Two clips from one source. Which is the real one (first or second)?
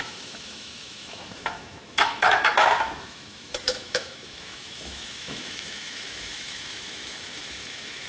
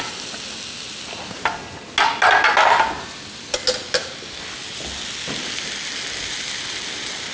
second